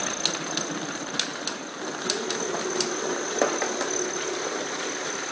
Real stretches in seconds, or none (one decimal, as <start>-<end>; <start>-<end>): 0.0-5.3